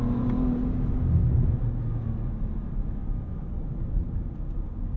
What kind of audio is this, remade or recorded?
recorded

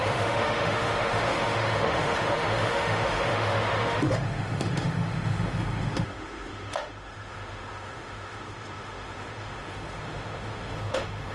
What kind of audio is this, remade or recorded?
remade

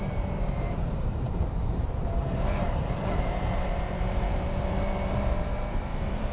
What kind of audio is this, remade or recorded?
remade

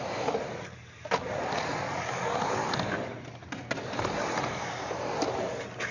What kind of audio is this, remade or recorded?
recorded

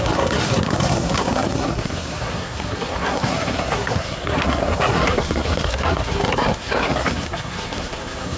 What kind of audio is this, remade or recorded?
remade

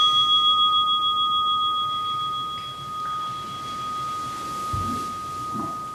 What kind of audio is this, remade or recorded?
recorded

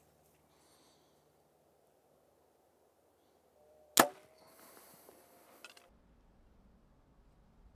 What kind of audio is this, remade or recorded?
recorded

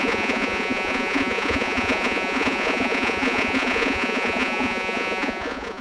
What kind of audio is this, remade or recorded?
remade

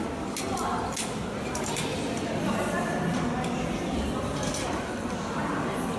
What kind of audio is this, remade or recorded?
recorded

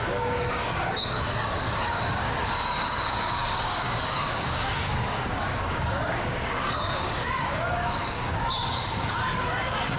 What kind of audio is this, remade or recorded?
remade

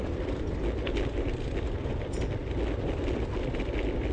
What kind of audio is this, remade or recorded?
recorded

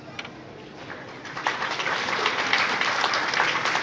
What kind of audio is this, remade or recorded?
recorded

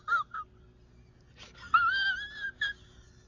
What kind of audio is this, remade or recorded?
recorded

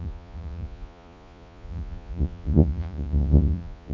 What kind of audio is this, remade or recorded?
remade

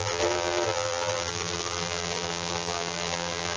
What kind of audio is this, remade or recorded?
remade